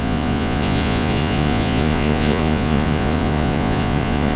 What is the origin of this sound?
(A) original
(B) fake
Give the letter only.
B